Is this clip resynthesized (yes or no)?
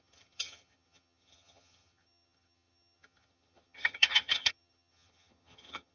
yes